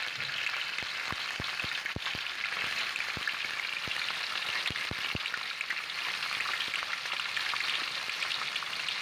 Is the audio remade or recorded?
recorded